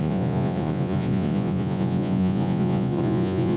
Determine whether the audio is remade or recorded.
remade